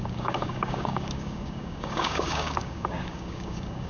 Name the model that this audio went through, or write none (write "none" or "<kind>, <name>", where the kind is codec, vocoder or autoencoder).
codec, DAC